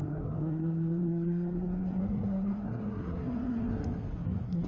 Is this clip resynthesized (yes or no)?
yes